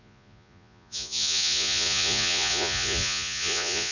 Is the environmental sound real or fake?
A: fake